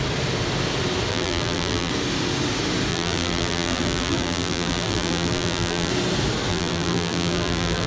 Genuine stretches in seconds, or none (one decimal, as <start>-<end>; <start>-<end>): 0.0-1.1; 1.9-2.9; 5.9-6.5